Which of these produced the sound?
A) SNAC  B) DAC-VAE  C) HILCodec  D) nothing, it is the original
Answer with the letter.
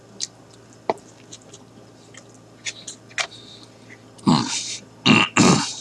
D